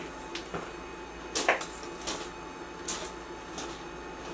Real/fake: real